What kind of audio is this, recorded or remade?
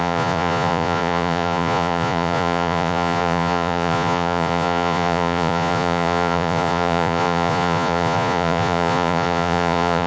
remade